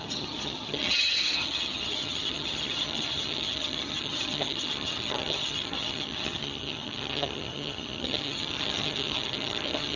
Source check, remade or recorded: remade